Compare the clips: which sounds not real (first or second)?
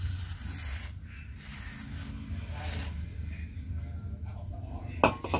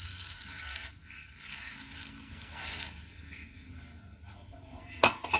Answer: second